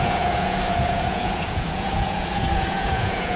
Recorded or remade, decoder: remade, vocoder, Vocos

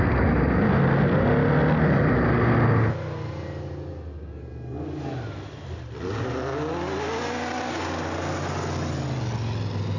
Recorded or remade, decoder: recorded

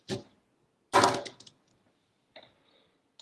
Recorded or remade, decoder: recorded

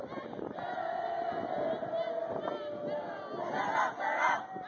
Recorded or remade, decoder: recorded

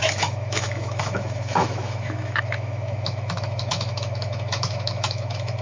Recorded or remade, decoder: remade, autoencoder, DAC-VAE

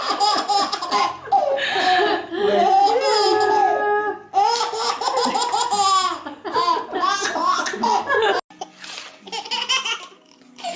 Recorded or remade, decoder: recorded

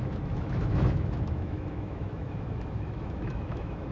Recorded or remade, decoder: remade, autoencoder, DAC-VAE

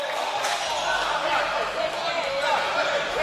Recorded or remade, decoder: recorded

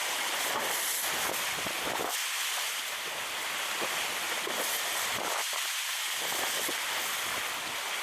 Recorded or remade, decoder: recorded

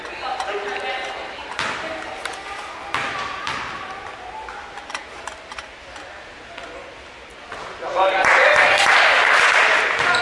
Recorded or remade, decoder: recorded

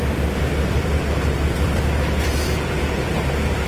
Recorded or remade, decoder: remade, vocoder, BigVGAN v2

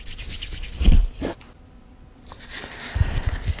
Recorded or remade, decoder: recorded